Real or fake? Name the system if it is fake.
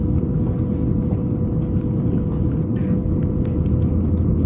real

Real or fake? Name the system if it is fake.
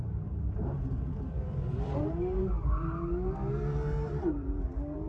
fake, vocoder, BigVGAN v2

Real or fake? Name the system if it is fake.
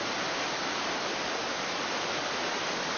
real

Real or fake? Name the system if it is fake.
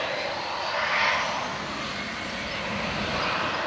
real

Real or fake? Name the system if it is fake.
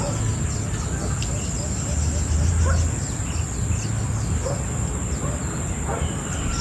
real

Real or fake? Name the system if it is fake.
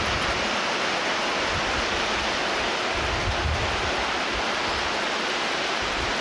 real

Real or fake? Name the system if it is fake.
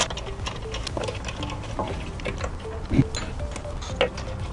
real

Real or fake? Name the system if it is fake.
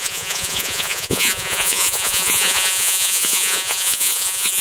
fake, vocoder, Vocos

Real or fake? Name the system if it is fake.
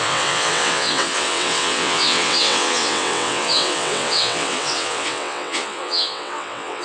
fake, vocoder, WaveNeXt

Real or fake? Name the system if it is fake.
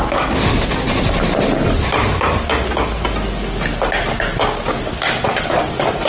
real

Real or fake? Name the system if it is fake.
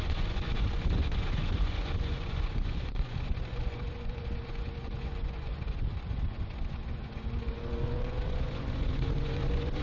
fake, vocoder, Vocos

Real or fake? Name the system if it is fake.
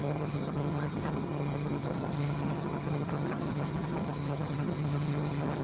fake, vocoder, HiFi-GAN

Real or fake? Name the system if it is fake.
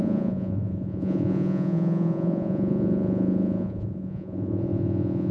fake, vocoder, Vocos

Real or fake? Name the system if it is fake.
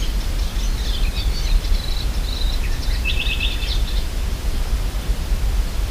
real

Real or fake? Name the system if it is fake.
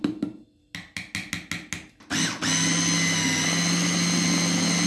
real